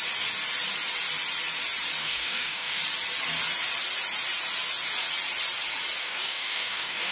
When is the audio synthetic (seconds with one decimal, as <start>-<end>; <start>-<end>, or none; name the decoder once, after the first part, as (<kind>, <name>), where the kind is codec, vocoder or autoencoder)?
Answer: 2.0-2.8 (codec, DAC); 6.0-7.1